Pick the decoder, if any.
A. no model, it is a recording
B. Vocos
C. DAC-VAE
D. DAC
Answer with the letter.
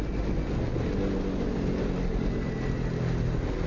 A